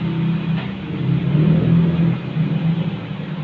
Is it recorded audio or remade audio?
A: recorded